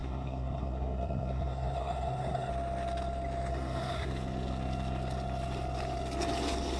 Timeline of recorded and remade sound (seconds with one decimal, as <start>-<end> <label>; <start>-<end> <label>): 0.0-2.5 remade; 2.5-3.5 recorded; 3.5-4.1 remade; 4.1-6.8 recorded